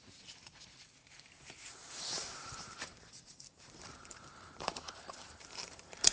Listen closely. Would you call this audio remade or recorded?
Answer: remade